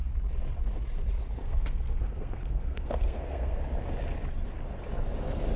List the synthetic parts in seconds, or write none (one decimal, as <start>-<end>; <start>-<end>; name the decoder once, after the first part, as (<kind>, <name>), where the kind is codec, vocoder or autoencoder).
1.4-3.6 (codec, SNAC)